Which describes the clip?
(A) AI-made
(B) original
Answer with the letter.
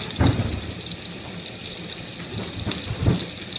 B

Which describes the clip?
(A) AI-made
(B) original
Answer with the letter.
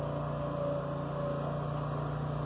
B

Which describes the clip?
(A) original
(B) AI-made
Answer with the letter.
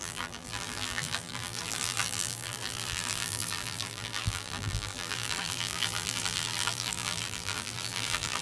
B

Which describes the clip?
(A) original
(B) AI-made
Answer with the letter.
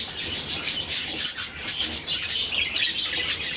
B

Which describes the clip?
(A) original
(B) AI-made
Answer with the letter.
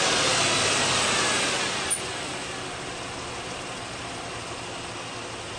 A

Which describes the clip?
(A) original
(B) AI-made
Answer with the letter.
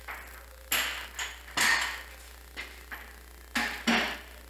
A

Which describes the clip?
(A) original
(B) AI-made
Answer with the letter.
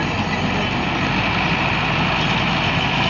A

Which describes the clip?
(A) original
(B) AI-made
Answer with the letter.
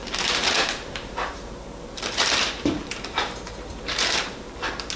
B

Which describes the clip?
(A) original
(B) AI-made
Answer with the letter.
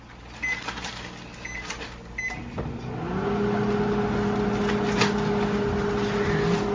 A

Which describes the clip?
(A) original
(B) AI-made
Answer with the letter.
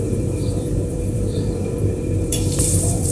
B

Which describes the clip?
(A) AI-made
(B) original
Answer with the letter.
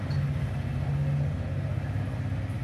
B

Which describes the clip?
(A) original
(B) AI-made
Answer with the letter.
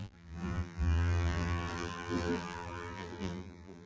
B